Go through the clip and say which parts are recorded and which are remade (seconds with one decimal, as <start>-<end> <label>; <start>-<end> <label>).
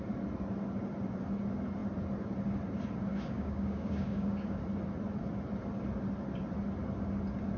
0.0-3.1 recorded; 3.1-4.6 remade; 4.6-7.6 recorded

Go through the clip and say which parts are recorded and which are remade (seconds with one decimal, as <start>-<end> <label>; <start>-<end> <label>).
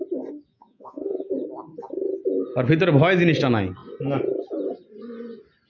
0.0-0.5 recorded; 0.5-1.3 remade; 1.3-5.7 recorded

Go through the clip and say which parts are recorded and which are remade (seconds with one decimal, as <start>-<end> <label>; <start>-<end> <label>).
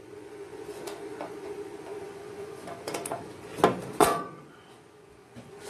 0.0-3.5 remade; 3.5-4.0 recorded; 4.0-5.7 remade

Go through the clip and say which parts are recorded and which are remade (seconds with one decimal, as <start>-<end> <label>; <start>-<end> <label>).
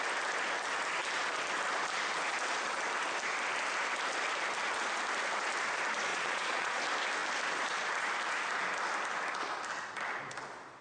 0.0-6.1 recorded; 6.1-6.8 remade; 6.8-10.8 recorded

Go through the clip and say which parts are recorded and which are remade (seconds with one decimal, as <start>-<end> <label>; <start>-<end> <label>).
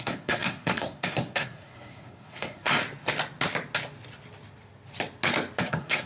0.0-2.8 remade; 2.8-5.6 recorded; 5.6-6.1 remade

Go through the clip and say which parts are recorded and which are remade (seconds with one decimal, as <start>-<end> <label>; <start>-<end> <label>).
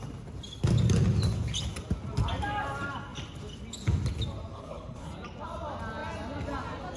0.0-4.5 recorded; 4.5-5.1 remade; 5.1-7.0 recorded